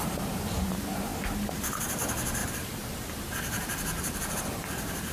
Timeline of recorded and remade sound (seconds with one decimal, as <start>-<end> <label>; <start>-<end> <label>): 0.0-1.1 remade; 1.1-1.8 recorded; 1.8-5.1 remade